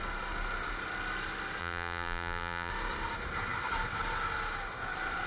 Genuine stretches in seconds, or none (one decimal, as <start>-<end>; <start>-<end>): 0.0-1.6; 2.7-5.3